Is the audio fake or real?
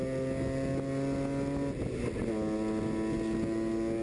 real